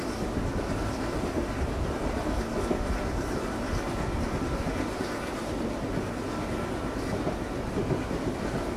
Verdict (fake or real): real